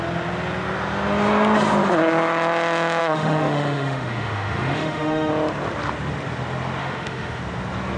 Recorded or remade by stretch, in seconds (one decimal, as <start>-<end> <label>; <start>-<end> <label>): 0.0-3.0 recorded; 3.0-5.3 remade; 5.3-6.8 recorded; 6.8-7.4 remade; 7.4-8.0 recorded